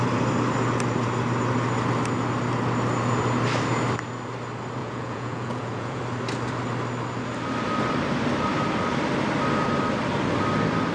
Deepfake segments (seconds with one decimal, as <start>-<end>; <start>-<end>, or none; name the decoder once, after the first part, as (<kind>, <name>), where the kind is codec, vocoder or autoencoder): 4.8-6.0 (vocoder, Vocos)